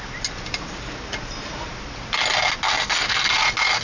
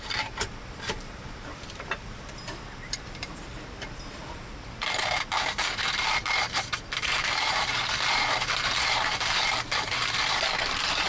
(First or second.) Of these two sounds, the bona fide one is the first